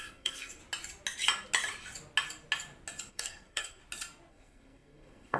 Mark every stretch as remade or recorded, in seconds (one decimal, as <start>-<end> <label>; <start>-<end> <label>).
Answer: 0.0-0.6 remade; 0.6-3.1 recorded; 3.1-3.8 remade; 3.8-4.3 recorded; 4.3-5.4 remade